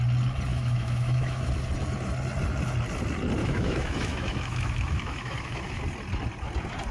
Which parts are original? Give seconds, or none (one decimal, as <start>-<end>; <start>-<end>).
0.0-0.5; 1.5-3.4; 5.8-6.9